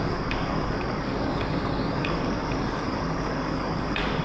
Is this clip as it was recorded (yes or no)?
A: no